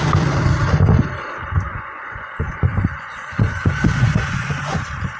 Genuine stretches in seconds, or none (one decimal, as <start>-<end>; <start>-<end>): 0.0-1.7; 4.8-5.2